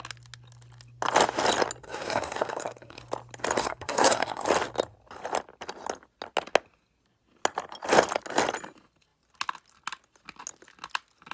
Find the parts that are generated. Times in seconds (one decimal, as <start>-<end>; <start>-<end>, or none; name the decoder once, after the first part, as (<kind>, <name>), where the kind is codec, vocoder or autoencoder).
1.8-3.0 (codec, SNAC); 3.6-4.5